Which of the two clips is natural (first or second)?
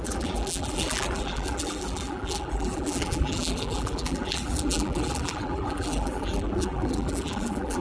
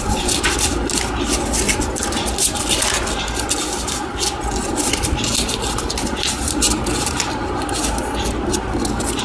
second